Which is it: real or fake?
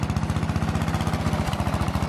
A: real